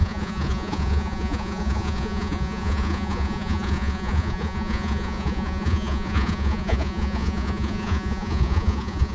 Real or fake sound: fake